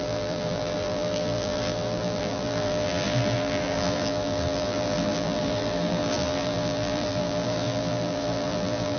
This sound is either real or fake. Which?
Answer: fake